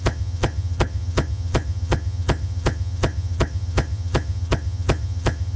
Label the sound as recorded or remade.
remade